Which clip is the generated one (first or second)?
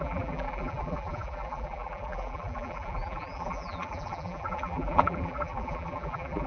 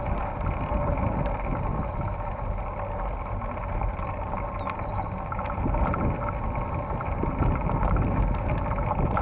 first